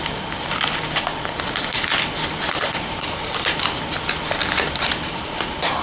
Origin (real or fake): real